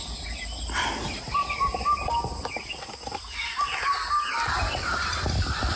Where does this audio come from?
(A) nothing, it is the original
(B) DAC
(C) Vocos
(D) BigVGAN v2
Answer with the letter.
A